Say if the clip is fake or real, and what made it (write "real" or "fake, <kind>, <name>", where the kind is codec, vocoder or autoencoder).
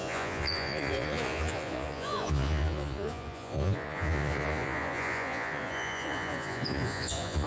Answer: fake, vocoder, Vocos